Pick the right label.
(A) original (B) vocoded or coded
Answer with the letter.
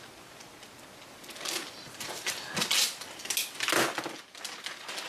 A